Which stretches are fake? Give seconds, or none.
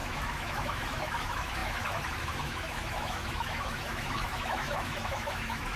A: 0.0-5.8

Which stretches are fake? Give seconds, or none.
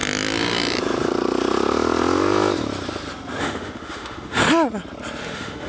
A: 3.4-4.4; 5.2-5.7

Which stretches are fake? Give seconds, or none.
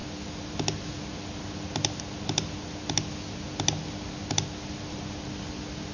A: none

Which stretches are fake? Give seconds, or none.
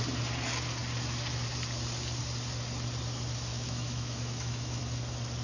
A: 3.5-4.8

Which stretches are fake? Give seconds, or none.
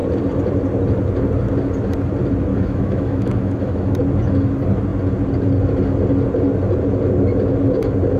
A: 2.5-3.9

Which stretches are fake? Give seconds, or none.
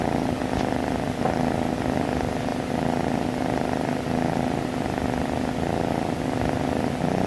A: none